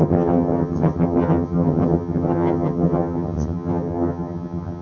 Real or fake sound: fake